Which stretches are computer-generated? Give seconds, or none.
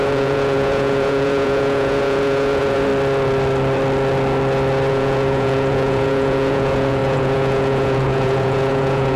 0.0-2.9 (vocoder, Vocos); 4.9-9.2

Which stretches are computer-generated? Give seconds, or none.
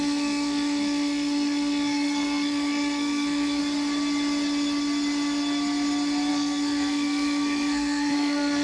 0.0-3.6 (codec, SNAC); 6.3-8.6